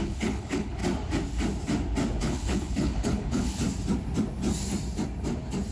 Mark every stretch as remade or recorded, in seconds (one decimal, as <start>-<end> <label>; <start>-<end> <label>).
0.0-0.8 remade; 0.8-2.2 recorded; 2.2-3.6 remade; 3.6-5.7 recorded